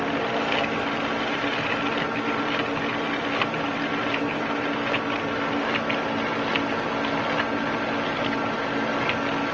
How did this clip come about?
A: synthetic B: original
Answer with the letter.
B